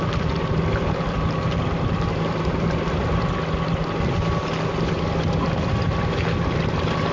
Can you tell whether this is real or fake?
real